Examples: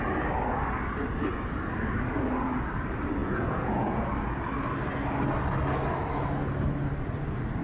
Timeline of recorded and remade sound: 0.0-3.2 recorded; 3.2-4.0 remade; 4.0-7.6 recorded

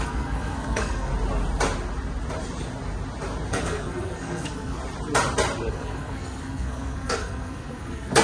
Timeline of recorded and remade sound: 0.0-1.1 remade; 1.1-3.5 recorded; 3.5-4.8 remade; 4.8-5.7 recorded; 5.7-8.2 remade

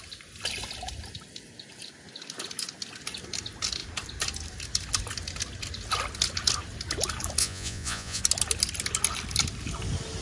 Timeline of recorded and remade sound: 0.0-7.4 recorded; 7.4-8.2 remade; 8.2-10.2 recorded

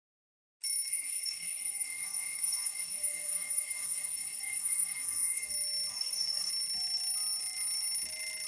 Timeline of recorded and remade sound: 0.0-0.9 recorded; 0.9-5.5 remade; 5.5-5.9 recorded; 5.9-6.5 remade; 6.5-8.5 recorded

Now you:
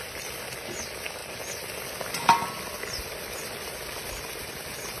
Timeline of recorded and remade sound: 0.0-5.0 recorded

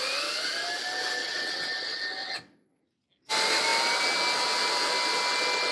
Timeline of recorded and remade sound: 0.0-1.2 recorded; 1.2-1.7 remade; 1.7-2.2 recorded; 2.2-2.8 remade; 2.8-5.7 recorded